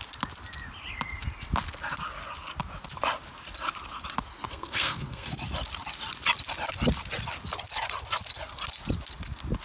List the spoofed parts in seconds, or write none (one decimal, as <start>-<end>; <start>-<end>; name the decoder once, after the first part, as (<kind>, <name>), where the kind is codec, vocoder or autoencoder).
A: 4.5-5.3 (codec, SNAC)